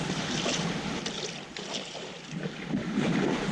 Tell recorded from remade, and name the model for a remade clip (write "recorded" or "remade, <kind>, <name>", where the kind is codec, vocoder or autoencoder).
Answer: recorded